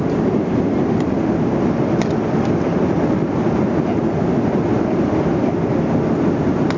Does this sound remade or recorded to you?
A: recorded